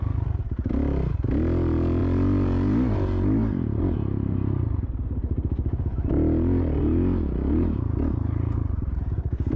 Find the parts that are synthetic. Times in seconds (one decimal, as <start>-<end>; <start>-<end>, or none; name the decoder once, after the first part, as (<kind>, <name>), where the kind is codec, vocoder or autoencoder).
none